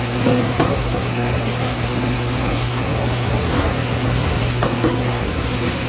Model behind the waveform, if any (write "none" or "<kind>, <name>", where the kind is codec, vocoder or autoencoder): codec, SNAC